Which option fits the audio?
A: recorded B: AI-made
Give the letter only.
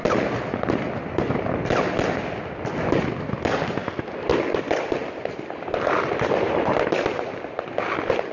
A